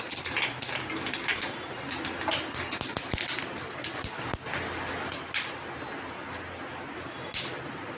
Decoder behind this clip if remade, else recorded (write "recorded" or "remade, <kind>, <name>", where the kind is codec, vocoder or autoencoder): recorded